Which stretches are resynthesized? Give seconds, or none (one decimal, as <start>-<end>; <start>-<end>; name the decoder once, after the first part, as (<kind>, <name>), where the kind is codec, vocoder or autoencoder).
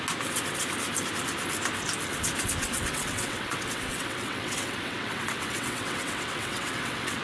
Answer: 2.6-7.2 (vocoder, WaveNeXt)